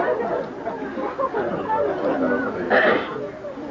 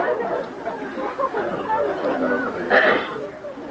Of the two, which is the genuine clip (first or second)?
first